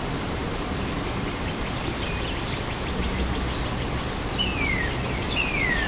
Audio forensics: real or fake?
real